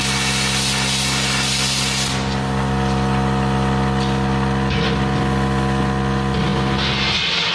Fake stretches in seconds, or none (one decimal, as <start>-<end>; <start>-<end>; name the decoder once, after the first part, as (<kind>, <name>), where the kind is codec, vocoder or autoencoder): none